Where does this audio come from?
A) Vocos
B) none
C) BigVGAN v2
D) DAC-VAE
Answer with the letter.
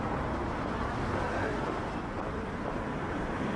B